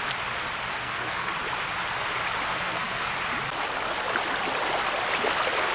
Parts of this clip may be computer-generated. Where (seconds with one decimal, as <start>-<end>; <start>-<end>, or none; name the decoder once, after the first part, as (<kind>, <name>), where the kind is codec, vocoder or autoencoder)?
0.7-1.3 (codec, SNAC); 2.5-3.1